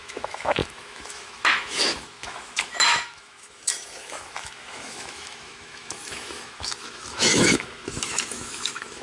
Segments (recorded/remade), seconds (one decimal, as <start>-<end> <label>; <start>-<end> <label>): 0.0-9.0 remade